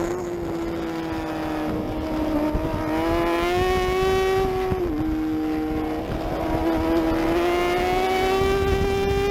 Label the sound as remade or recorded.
recorded